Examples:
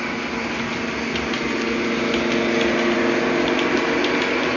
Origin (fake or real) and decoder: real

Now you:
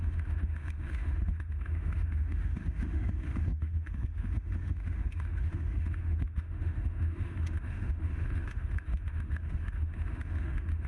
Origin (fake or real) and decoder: fake, autoencoder, DAC-VAE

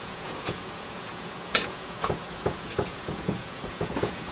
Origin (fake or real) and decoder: fake, vocoder, Vocos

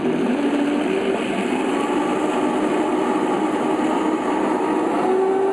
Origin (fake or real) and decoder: real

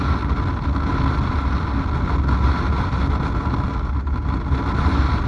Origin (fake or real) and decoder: real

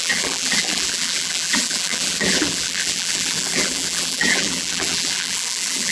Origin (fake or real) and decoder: fake, vocoder, BigVGAN v2